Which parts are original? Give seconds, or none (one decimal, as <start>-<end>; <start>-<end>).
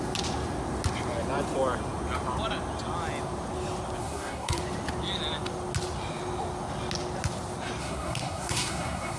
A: 0.0-4.0; 4.6-7.8